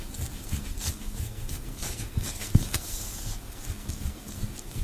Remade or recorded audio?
remade